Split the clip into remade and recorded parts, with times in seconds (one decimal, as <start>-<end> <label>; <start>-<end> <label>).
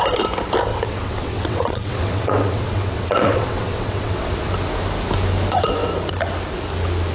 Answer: 0.0-0.7 recorded; 0.7-4.3 remade; 4.3-7.1 recorded